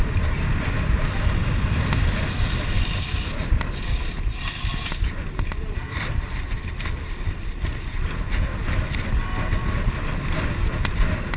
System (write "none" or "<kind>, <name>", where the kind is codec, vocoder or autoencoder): none